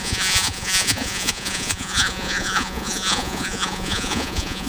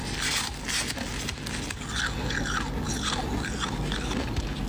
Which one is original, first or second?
second